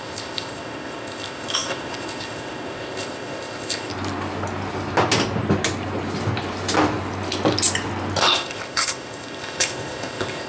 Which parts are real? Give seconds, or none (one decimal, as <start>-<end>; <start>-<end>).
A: 3.9-8.2